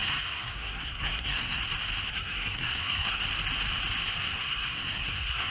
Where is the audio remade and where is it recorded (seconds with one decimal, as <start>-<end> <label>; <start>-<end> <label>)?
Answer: 0.0-1.6 remade; 1.6-2.1 recorded; 2.1-3.2 remade; 3.2-4.2 recorded; 4.2-5.5 remade